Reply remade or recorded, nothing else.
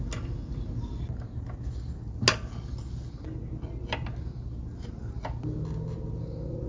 recorded